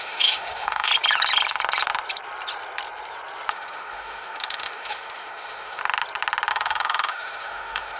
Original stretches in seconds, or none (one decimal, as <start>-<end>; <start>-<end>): 0.9-3.5; 5.8-6.5